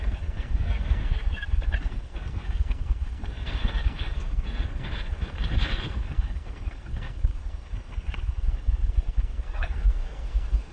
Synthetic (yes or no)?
yes